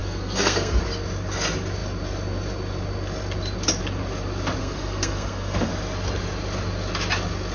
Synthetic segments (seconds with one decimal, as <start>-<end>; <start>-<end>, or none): 0.0-0.8; 4.6-5.7